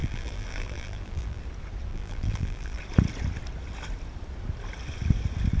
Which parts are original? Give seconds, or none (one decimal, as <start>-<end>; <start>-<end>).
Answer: 1.4-1.9; 2.8-5.6